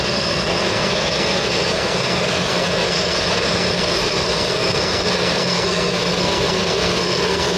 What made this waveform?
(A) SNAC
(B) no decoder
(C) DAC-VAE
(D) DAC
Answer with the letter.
A